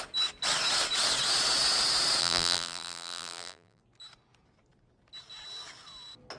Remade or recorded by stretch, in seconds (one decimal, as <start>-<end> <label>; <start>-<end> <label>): 0.0-2.2 recorded; 2.2-3.8 remade; 3.8-6.4 recorded